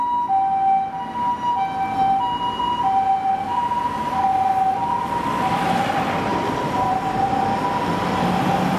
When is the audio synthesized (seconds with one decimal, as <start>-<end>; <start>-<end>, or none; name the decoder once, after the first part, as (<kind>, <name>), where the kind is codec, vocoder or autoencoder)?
none